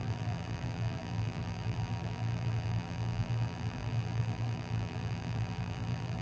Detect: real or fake fake